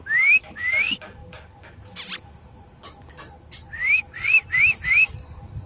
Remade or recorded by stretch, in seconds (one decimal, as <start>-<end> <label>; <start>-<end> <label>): 0.0-5.7 recorded